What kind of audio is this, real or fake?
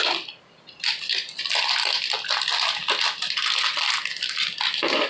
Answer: real